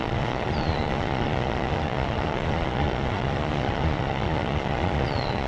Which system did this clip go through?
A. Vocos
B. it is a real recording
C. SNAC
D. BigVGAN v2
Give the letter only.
A